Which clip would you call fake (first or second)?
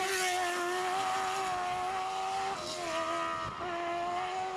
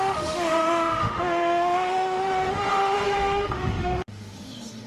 second